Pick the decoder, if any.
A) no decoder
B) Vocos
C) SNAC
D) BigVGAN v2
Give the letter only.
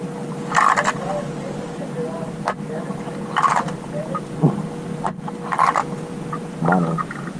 A